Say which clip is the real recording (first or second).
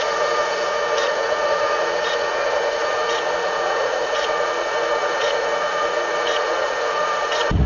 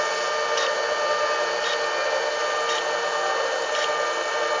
second